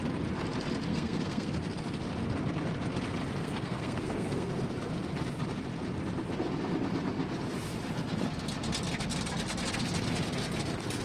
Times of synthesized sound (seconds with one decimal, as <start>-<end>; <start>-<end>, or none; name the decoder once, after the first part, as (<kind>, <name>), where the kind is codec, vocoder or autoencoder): 0.9-1.5 (codec, SNAC); 3.4-4.5